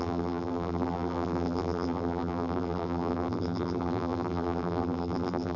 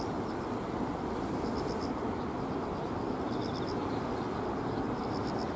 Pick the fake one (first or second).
first